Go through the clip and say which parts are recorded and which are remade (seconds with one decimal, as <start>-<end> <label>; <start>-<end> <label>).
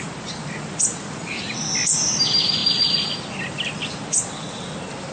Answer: 0.0-5.1 recorded